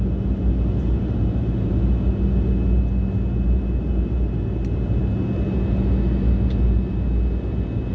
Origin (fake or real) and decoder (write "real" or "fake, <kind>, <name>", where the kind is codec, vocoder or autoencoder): real